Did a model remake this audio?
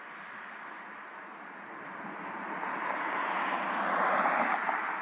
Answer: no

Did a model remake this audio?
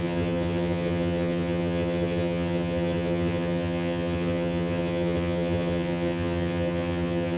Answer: yes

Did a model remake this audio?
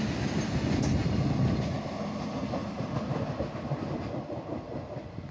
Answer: no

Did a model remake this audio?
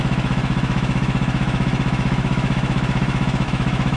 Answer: yes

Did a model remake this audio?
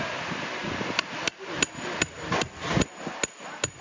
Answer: no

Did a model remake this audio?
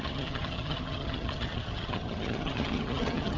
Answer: yes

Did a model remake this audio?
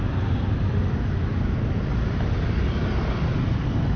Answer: no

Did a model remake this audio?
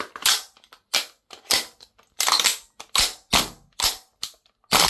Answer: no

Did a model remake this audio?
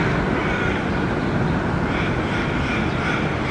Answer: no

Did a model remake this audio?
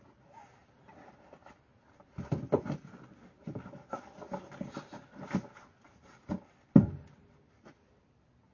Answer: no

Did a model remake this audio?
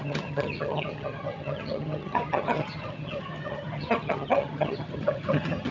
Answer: yes